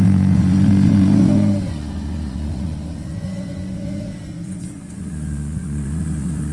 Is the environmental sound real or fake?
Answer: fake